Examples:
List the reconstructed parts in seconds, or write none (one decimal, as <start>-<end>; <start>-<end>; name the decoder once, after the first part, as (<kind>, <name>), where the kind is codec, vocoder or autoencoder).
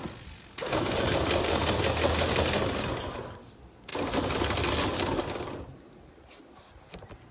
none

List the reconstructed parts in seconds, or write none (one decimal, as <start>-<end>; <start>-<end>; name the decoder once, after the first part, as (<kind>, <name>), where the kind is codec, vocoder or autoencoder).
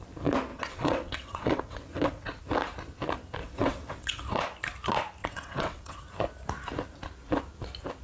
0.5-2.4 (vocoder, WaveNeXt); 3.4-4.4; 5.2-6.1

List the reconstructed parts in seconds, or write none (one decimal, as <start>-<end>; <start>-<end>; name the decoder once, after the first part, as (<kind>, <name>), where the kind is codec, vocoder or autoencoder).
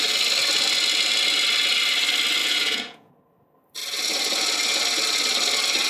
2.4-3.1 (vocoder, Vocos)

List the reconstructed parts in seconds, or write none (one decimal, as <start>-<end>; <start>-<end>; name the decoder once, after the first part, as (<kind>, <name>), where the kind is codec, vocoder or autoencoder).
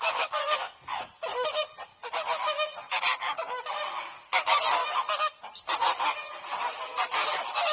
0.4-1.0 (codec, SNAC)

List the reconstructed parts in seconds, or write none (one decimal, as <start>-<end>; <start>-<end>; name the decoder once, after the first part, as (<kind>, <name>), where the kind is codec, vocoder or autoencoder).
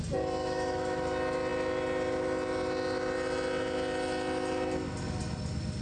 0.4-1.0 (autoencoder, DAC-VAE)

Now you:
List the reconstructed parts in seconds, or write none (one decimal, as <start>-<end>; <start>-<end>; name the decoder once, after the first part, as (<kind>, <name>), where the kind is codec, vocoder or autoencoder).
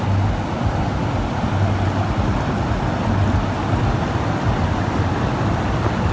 none